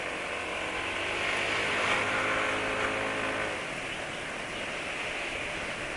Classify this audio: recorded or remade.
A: recorded